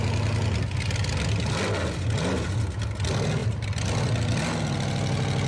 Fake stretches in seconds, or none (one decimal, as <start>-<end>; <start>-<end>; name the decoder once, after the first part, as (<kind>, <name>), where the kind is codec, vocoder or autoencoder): none